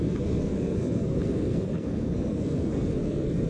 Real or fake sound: fake